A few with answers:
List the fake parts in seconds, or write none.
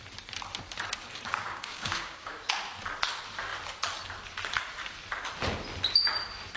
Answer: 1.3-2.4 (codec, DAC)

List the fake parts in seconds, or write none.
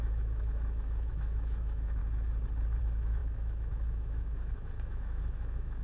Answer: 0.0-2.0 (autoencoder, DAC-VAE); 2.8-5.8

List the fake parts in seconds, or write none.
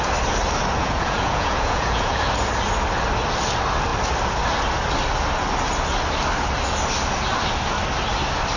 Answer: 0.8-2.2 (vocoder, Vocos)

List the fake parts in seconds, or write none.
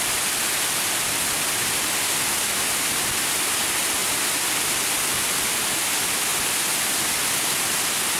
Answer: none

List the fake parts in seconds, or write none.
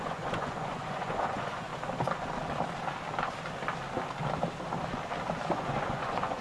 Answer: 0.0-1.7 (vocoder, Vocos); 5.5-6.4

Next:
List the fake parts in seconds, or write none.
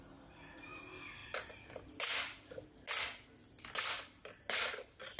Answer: none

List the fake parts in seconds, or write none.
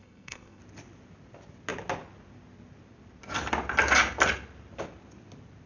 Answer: 0.0-0.6 (codec, SNAC)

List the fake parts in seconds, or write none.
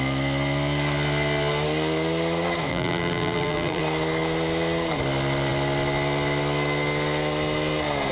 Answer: 2.7-3.8 (vocoder, BigVGAN v2)